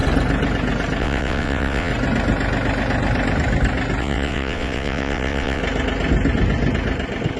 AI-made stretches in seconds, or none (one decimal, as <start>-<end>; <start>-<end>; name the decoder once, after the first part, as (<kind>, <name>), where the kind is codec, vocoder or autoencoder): 1.0-1.9 (vocoder, WaveNeXt); 4.0-5.6